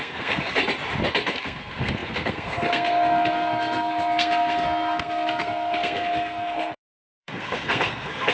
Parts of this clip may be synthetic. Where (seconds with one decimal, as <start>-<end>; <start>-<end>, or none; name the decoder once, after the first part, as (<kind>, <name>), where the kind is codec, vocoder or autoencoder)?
0.0-0.6 (codec, SNAC); 1.4-8.3